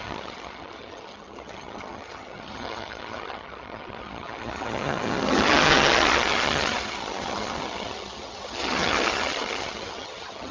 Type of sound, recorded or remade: remade